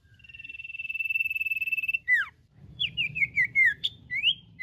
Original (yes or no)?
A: no